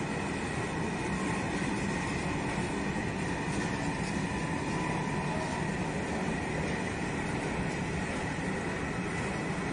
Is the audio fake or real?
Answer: real